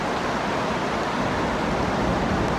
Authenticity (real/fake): real